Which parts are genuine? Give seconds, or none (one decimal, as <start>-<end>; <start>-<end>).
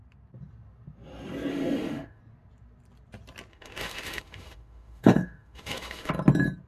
0.0-1.5; 2.2-3.5; 6.1-6.7